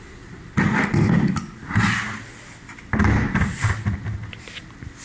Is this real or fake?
real